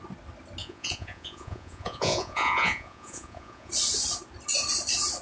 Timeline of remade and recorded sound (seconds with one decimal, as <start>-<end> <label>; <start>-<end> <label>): 0.0-0.6 recorded; 0.6-3.7 remade; 3.7-5.2 recorded